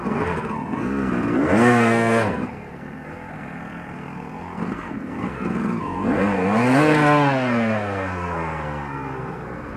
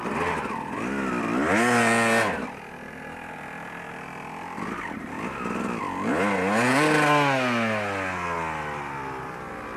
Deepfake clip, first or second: first